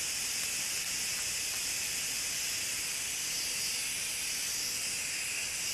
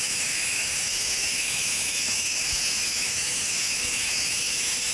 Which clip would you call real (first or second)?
first